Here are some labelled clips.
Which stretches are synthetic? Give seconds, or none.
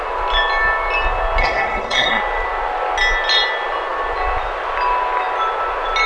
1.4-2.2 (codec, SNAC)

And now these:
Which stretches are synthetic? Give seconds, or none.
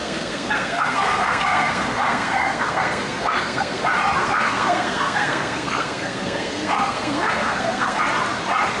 0.0-3.8 (codec, SNAC); 4.2-8.0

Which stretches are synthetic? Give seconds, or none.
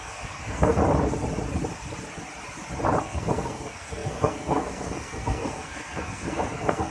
0.0-0.8 (codec, SNAC); 3.0-6.9